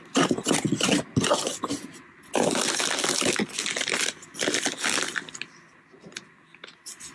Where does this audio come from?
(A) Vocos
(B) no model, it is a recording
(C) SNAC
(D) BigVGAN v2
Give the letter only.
B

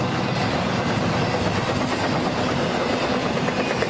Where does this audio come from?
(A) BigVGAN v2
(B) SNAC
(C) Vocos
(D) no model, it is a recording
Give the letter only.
D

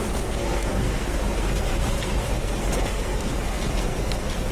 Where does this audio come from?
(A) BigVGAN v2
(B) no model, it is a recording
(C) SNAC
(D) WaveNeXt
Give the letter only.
C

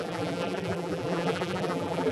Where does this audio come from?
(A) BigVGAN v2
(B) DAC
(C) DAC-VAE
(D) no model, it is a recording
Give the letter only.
A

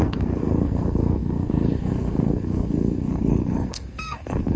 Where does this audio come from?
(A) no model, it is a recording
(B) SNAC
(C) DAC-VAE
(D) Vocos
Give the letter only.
B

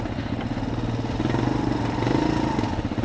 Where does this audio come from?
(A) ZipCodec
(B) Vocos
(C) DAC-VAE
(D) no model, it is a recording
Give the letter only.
D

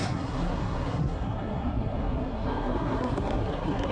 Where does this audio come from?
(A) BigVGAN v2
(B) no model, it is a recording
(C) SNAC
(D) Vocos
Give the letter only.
C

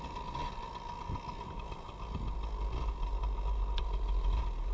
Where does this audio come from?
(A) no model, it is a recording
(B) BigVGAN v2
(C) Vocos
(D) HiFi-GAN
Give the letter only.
A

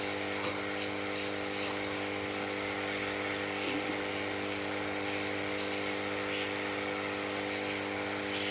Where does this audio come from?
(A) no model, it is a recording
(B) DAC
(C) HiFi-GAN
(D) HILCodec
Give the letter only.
A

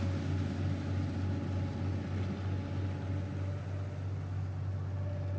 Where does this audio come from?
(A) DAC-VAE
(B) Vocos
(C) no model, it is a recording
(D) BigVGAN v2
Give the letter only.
C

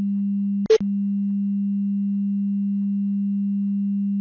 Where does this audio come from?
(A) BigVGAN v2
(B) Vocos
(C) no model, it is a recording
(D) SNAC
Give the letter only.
C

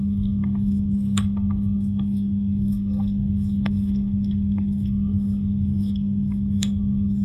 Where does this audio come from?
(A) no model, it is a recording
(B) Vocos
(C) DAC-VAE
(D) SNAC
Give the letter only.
D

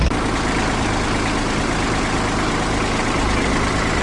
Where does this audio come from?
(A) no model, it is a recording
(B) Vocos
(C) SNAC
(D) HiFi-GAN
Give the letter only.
A